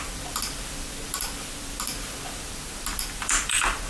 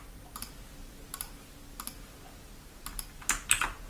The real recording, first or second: second